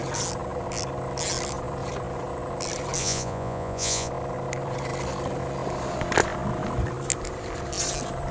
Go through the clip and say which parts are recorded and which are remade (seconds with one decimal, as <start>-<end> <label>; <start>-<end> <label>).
0.0-3.0 recorded; 3.0-4.1 remade; 4.1-8.3 recorded